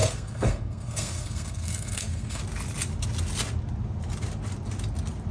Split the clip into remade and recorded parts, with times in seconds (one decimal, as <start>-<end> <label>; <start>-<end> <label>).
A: 0.0-2.4 remade; 2.4-5.3 recorded